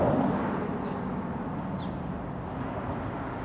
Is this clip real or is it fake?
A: real